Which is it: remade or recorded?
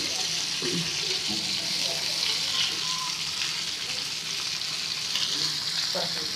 recorded